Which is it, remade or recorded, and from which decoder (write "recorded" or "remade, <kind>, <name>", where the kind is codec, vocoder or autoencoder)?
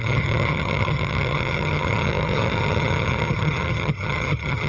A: remade, vocoder, HiFi-GAN